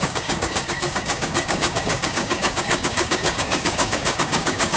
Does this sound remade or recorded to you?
remade